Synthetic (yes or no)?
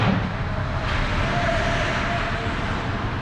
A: no